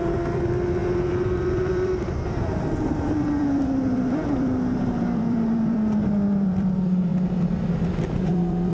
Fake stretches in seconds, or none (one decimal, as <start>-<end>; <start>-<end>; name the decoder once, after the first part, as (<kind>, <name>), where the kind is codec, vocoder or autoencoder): 0.0-7.1 (vocoder, BigVGAN v2); 7.9-8.7